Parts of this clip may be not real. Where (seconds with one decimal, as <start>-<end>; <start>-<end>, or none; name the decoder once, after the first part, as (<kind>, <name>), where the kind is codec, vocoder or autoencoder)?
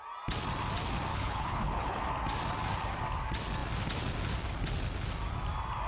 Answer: 1.1-2.0 (codec, HILCodec)